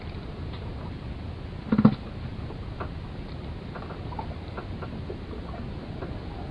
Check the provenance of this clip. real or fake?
real